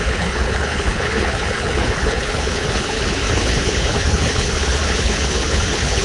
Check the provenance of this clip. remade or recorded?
remade